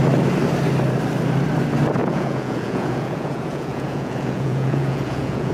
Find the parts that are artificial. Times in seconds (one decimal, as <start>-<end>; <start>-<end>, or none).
2.0-5.5